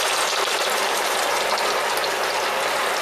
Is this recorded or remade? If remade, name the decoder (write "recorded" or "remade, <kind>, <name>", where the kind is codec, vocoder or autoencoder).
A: recorded